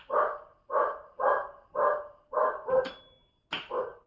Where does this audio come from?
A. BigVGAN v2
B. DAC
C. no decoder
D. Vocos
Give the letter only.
C